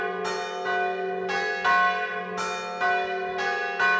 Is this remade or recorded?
recorded